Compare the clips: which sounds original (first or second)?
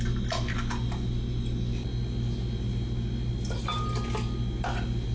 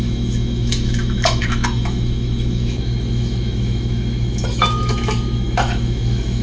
first